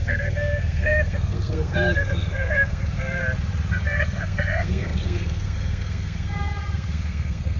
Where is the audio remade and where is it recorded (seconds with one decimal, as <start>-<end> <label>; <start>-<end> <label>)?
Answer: 0.0-3.2 remade; 3.2-3.7 recorded; 3.7-7.6 remade